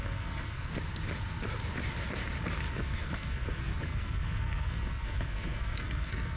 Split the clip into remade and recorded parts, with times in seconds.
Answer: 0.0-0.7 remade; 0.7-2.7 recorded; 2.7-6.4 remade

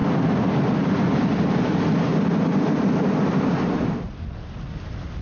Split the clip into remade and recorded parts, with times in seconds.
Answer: 0.0-1.7 remade; 1.7-5.2 recorded